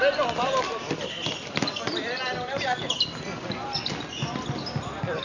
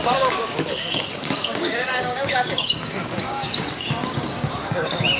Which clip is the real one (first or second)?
first